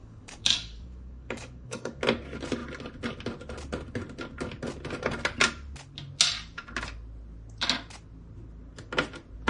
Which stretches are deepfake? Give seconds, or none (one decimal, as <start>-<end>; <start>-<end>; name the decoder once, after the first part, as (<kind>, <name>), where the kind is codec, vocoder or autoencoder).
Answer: 0.0-2.0 (codec, DAC)